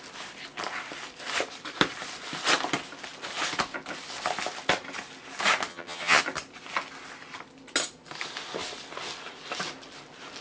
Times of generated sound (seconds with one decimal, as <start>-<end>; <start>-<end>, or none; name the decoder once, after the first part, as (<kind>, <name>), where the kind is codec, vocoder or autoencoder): 5.7-6.2 (vocoder, HiFi-GAN)